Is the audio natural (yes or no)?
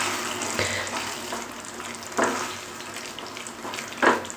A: yes